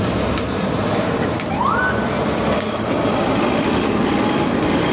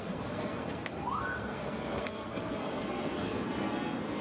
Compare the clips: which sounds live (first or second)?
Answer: first